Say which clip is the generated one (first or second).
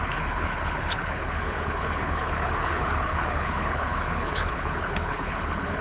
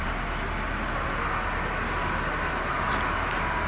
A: first